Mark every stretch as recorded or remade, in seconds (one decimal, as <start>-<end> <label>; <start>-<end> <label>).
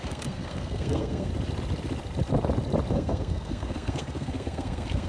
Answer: 0.0-1.3 remade; 1.3-2.9 recorded; 2.9-5.1 remade